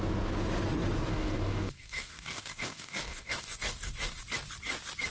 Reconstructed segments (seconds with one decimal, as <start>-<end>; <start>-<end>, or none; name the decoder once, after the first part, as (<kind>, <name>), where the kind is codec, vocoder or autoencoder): 1.1-4.2 (codec, DAC)